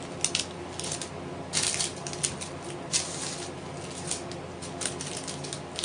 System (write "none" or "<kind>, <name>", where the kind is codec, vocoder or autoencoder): none